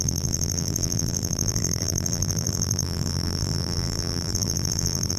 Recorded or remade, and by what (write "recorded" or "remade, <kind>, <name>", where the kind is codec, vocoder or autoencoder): remade, vocoder, BigVGAN v2